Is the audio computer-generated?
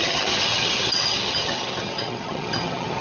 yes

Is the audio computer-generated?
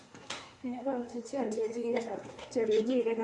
yes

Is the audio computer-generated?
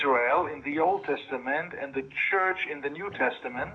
yes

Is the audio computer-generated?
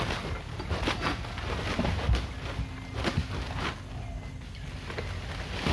no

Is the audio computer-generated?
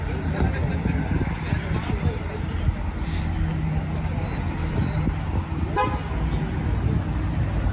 no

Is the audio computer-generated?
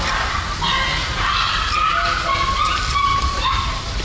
no